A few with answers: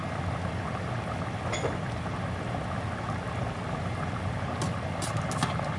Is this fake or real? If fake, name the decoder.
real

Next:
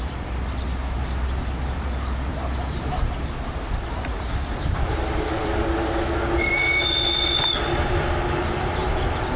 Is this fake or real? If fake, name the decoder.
real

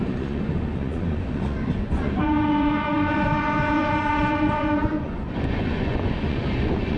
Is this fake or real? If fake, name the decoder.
fake, vocoder, Vocos